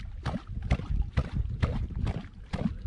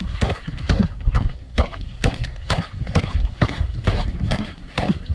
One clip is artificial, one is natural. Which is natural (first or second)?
first